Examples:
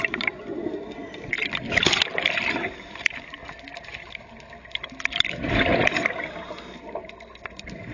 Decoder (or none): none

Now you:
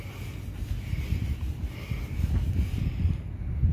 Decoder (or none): none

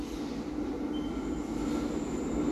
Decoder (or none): none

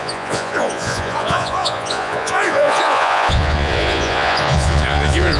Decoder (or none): vocoder, Vocos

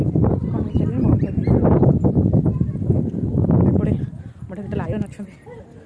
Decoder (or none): none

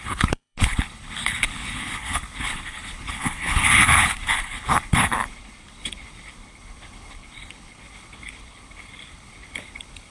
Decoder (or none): codec, HILCodec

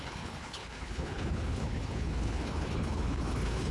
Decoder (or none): codec, HILCodec